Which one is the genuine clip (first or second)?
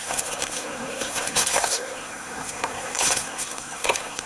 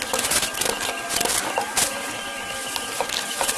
second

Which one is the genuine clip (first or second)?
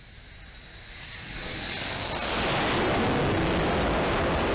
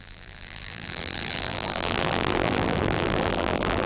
first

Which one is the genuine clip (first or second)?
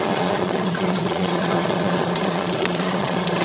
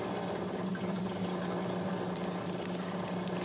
second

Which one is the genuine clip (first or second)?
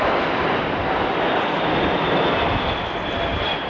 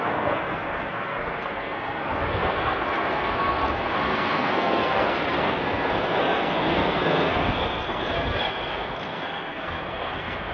first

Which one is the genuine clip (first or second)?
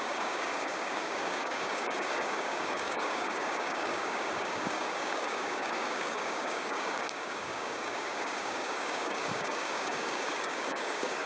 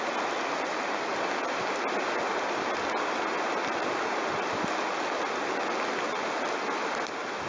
second